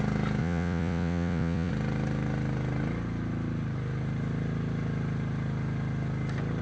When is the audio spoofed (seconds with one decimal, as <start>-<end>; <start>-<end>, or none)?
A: 0.4-1.7